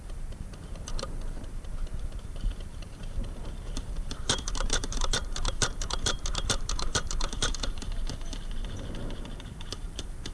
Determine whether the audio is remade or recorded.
remade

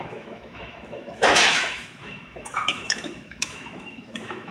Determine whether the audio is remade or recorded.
remade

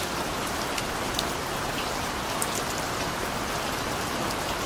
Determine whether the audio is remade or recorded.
recorded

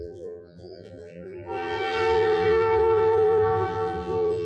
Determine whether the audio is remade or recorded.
remade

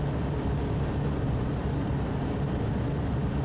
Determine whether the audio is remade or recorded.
recorded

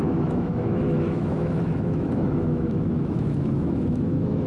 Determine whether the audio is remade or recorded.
remade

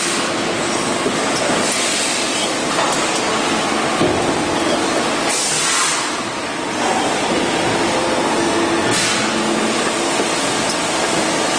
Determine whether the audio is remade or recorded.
recorded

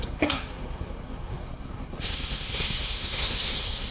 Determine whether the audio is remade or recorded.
remade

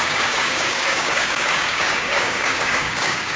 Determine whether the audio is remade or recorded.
remade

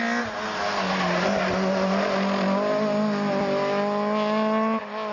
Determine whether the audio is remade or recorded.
recorded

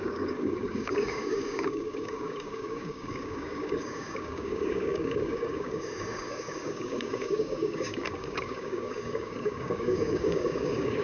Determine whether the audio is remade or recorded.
remade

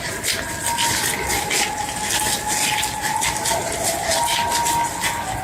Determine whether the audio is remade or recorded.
recorded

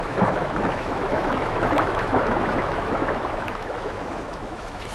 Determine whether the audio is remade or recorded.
remade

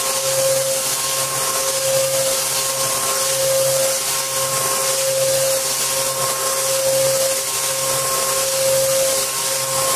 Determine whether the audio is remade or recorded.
recorded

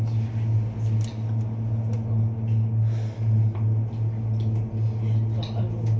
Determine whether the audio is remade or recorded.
recorded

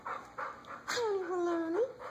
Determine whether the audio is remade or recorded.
recorded